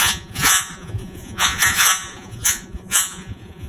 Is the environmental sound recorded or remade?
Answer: remade